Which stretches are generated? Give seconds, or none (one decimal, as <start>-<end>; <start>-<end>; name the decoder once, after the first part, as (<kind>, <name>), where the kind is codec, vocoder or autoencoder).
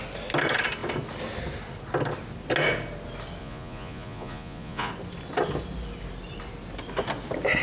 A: 3.4-4.9 (vocoder, Vocos)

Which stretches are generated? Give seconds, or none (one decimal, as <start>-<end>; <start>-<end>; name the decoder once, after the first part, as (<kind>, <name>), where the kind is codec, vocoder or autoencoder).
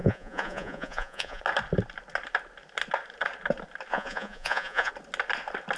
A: 0.0-1.4 (vocoder, Vocos); 3.9-4.9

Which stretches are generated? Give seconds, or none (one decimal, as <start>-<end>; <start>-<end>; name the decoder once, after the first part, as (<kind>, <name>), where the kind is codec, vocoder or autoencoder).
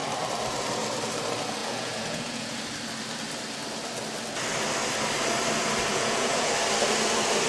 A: 1.6-2.6 (vocoder, Vocos); 5.9-6.5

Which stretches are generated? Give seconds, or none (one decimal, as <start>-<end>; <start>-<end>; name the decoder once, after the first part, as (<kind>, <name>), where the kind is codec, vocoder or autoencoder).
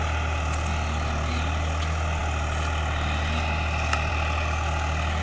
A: none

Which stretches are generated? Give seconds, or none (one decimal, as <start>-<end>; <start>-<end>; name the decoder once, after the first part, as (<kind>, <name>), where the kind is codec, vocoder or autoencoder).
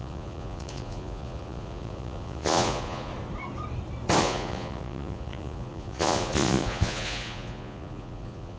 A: 0.0-3.1 (vocoder, Vocos); 4.2-8.6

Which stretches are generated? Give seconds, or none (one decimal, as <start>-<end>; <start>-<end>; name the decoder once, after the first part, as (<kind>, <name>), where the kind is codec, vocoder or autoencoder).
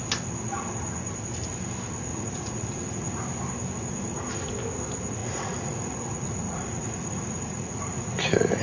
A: 2.1-3.2 (vocoder, Vocos); 5.2-8.6